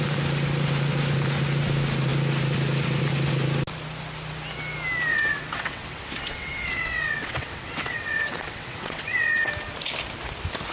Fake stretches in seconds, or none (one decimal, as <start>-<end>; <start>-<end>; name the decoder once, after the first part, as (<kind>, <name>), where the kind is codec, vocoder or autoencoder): 5.1-9.5 (vocoder, WaveNeXt)